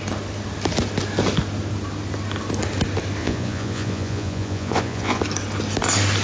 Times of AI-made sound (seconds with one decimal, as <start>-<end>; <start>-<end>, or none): 3.2-5.2